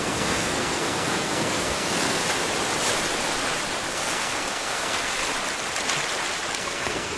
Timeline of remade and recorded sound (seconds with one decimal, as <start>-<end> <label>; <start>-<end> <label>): 0.0-2.2 remade; 2.2-3.9 recorded; 3.9-5.2 remade; 5.2-6.5 recorded; 6.5-7.2 remade